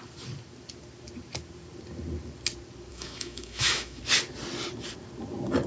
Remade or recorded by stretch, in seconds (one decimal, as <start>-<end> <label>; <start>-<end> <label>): 0.0-2.9 recorded; 2.9-4.0 remade; 4.0-5.7 recorded